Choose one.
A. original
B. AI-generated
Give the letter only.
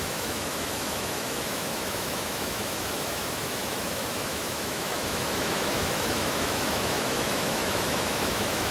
B